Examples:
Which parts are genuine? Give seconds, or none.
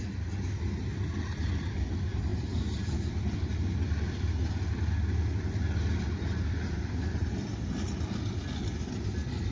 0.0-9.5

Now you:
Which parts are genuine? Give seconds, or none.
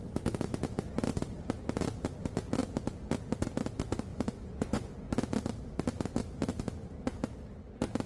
0.0-4.1; 4.9-8.1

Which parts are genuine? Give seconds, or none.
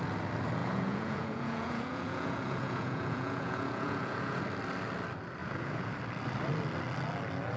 0.0-0.6; 4.4-5.4; 5.9-7.6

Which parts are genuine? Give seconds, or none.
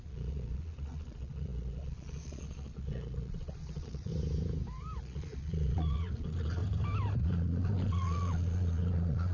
4.1-5.0; 6.6-7.2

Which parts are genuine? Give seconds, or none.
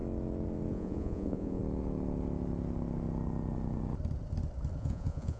0.0-0.7; 1.6-4.8